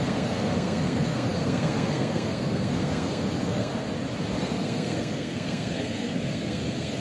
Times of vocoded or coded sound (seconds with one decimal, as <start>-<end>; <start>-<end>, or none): 0.0-3.7; 4.4-7.0